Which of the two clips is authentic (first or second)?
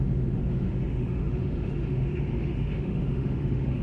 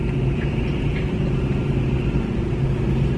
second